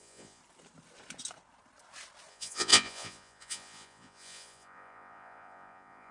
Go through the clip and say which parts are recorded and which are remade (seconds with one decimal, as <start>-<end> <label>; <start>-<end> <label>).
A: 0.0-0.4 remade; 0.4-2.3 recorded; 2.3-6.1 remade